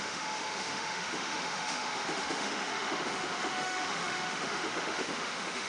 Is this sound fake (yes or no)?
yes